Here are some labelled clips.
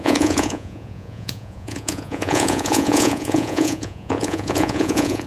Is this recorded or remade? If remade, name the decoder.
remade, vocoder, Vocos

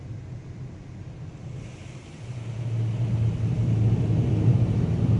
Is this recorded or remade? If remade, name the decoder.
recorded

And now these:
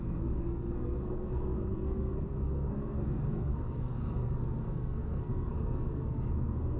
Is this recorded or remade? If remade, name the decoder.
remade, codec, SNAC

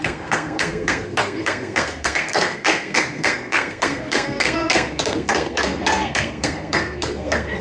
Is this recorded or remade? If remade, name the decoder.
remade, codec, SNAC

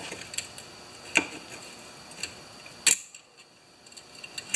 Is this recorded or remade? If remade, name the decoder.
recorded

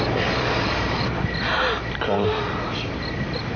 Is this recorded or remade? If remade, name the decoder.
remade, vocoder, BigVGAN v2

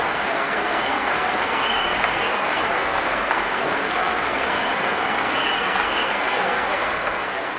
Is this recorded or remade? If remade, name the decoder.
remade, codec, SNAC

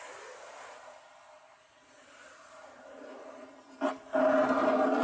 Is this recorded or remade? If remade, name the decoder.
recorded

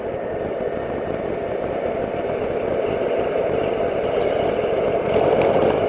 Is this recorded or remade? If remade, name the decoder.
recorded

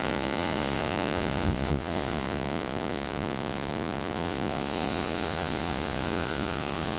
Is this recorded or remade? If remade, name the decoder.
remade, vocoder, Vocos